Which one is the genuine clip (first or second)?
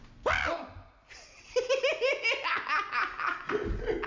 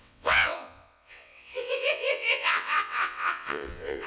first